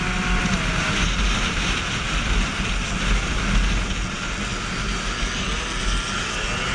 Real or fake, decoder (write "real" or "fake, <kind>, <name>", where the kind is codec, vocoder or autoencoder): real